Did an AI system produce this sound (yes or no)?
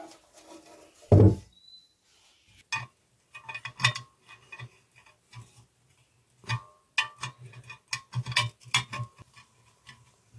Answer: no